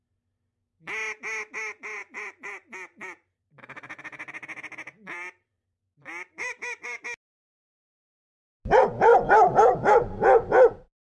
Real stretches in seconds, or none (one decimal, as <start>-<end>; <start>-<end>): 0.0-2.0; 7.0-11.2